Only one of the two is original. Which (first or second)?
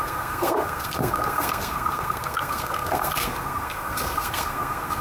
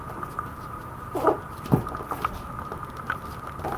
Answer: second